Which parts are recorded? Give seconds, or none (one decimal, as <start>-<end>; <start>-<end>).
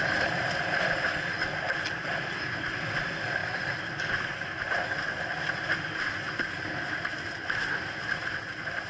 0.0-8.9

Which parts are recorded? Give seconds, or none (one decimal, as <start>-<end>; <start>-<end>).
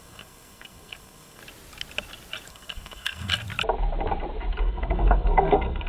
1.4-2.5; 3.3-4.6